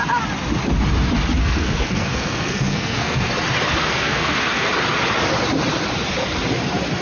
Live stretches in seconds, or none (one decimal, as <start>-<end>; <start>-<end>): 0.0-1.4; 3.3-3.8; 4.7-7.0